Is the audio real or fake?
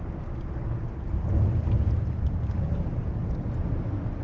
real